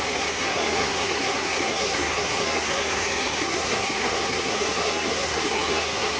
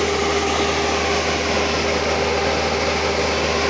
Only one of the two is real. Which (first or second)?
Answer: second